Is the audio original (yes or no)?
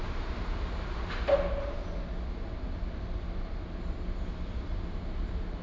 yes